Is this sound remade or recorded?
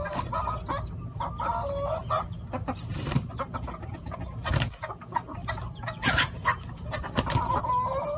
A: recorded